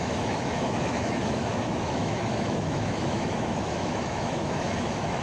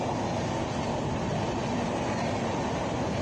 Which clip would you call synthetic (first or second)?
first